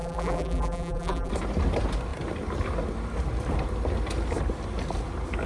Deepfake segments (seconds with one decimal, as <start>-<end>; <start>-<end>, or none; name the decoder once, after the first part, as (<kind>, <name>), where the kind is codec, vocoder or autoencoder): 0.0-1.3 (vocoder, BigVGAN v2)